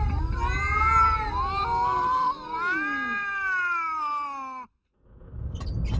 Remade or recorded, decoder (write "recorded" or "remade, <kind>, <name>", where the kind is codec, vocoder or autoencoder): recorded